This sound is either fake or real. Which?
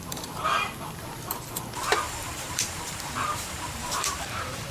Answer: fake